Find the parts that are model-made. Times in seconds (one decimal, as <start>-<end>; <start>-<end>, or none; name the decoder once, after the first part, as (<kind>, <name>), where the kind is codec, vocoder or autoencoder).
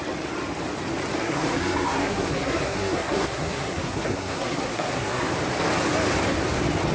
1.2-5.3 (codec, SNAC)